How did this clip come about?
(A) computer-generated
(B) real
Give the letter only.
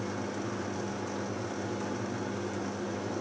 B